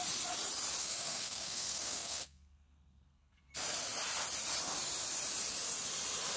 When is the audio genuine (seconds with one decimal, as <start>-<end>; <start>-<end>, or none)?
0.0-0.8; 3.5-6.4